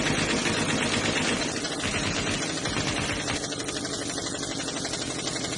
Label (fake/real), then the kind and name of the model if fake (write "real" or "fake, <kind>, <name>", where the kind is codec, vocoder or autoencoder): real